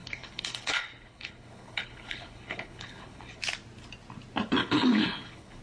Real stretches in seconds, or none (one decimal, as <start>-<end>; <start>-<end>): 3.4-4.6